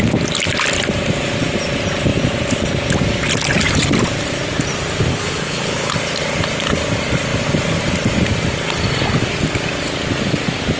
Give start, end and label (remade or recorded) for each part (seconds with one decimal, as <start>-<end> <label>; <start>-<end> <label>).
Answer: 0.0-5.1 recorded; 5.1-5.9 remade; 5.9-10.8 recorded